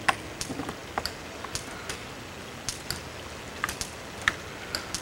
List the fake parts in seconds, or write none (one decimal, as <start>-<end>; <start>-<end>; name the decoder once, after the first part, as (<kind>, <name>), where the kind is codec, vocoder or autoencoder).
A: none